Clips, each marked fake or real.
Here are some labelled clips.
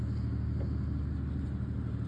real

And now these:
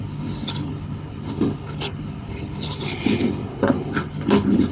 fake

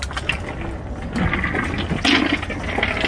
real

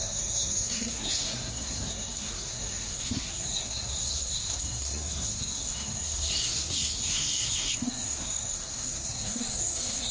fake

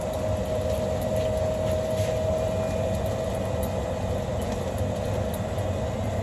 real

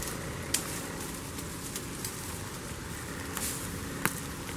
real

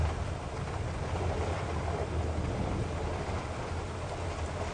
real